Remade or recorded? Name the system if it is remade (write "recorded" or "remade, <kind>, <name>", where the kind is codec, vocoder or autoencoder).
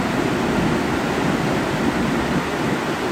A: recorded